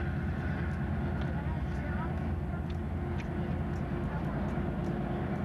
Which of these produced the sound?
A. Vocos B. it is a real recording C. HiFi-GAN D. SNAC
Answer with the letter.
B